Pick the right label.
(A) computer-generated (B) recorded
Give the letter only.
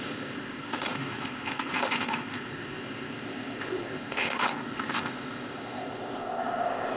A